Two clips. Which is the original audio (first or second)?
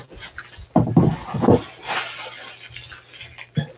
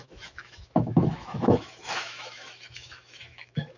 first